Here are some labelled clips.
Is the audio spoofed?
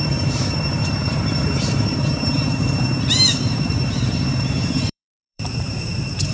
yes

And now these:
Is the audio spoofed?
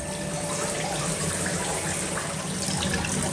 no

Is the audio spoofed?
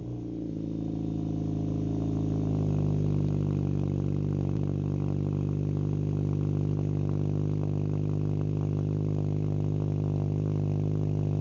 no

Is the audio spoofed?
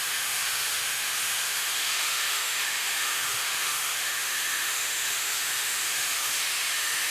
yes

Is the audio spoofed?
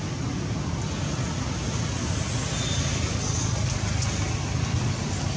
no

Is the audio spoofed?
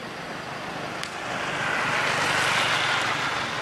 no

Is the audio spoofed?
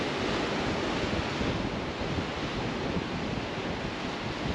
no